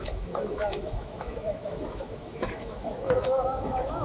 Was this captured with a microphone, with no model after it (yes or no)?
no